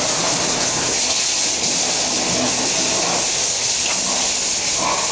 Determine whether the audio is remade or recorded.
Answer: recorded